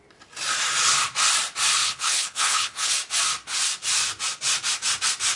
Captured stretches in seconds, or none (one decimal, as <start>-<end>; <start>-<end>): 0.0-1.8; 2.9-5.4